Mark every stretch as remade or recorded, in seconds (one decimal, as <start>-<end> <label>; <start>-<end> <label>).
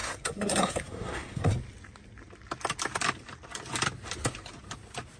0.0-1.5 remade; 1.5-5.2 recorded